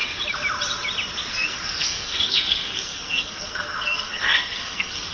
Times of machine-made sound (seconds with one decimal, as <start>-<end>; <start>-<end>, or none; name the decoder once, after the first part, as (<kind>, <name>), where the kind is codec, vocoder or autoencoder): 1.3-5.1 (codec, SNAC)